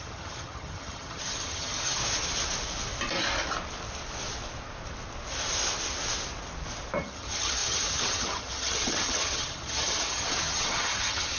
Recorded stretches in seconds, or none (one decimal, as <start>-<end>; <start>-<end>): 2.0-7.0